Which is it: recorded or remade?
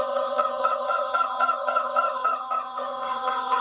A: remade